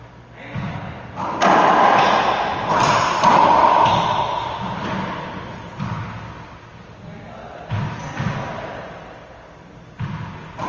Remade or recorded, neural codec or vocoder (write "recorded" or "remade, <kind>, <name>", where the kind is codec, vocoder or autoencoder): recorded